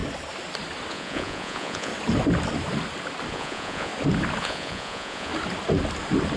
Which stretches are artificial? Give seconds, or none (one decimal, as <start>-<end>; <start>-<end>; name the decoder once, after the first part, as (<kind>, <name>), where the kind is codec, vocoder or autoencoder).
0.9-1.9 (vocoder, Vocos); 3.3-3.9; 4.4-5.3